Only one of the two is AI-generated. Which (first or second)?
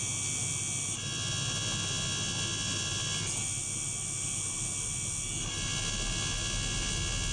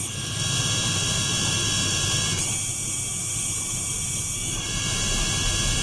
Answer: second